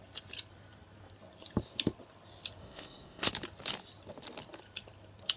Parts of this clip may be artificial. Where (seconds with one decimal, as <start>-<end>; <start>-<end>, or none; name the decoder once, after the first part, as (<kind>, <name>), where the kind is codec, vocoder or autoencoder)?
2.6-3.3 (codec, ZipCodec)